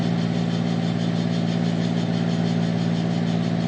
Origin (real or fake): real